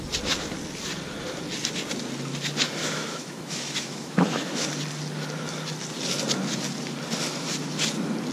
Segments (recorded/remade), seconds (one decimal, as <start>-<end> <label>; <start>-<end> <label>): 0.0-2.8 recorded; 2.8-4.6 remade; 4.6-8.3 recorded